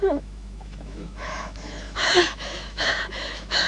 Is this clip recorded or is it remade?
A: remade